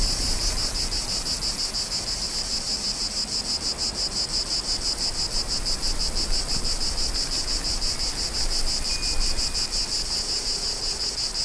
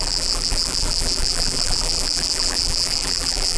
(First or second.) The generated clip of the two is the second